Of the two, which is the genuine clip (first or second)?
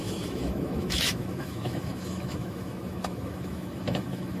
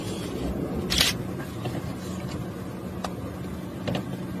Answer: second